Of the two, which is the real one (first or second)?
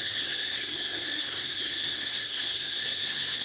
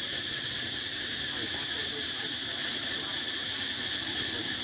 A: second